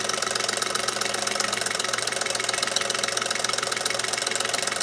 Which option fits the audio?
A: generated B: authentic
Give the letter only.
B